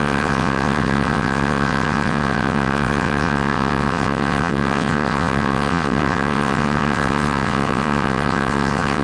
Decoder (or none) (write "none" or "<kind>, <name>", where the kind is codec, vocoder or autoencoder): vocoder, WaveNeXt